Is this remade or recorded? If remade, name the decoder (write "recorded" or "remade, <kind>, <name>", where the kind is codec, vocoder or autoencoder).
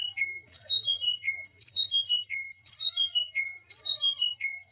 remade, vocoder, Vocos